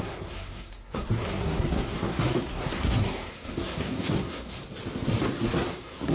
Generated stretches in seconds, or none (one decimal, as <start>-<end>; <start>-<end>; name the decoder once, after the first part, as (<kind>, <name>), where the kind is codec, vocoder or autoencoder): 0.0-4.6 (codec, SNAC); 5.4-6.1